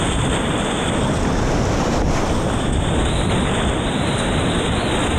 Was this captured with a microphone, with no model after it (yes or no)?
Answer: yes